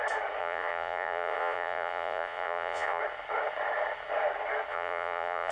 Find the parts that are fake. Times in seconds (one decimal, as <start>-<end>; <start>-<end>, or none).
0.4-3.0; 4.7-5.5